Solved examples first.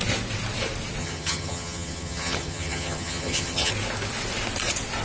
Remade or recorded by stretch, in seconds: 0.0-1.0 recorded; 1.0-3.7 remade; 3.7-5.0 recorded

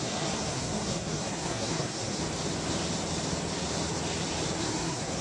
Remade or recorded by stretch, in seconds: 0.0-2.2 remade; 2.2-4.6 recorded; 4.6-5.2 remade

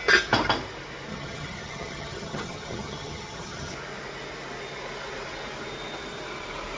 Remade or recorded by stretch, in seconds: 0.0-1.1 recorded; 1.1-3.7 remade; 3.7-6.8 recorded

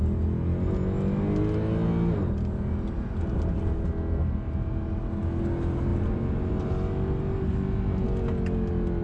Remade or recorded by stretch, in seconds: 0.0-5.9 recorded; 5.9-6.7 remade; 6.7-9.0 recorded

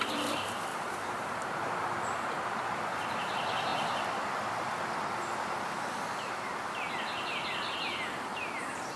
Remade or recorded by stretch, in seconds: 0.0-0.7 recorded; 0.7-2.3 remade; 2.3-8.3 recorded; 8.3-9.0 remade

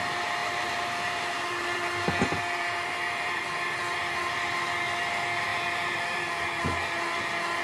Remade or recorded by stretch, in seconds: 0.0-0.4 recorded; 0.4-3.5 remade; 3.5-5.5 recorded; 5.5-6.3 remade; 6.3-7.6 recorded

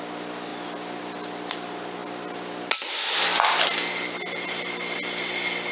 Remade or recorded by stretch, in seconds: 0.0-5.7 recorded

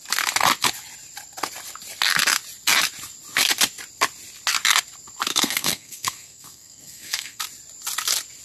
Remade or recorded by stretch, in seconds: 0.0-5.3 recorded; 5.3-7.4 remade; 7.4-8.4 recorded